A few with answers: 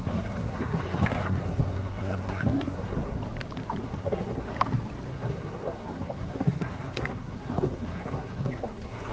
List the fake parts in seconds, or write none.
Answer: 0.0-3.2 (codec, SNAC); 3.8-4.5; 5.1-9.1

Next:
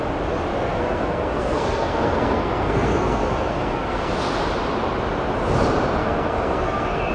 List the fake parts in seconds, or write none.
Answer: 0.7-4.1 (codec, SNAC); 6.0-7.1

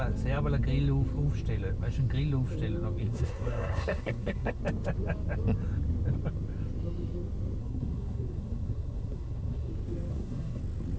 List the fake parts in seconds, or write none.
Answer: 3.0-4.6 (codec, SNAC); 7.6-9.7; 10.1-10.6

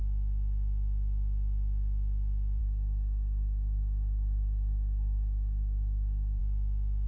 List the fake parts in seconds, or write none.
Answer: 2.6-6.4 (codec, SNAC)

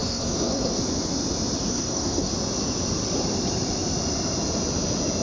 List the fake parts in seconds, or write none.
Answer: 0.0-0.8 (codec, SNAC); 1.7-2.3